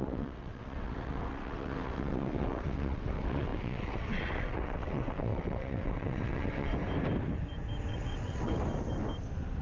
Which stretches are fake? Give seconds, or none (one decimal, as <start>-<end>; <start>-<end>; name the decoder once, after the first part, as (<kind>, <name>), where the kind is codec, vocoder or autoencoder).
0.0-6.7 (vocoder, WaveNeXt); 7.9-8.5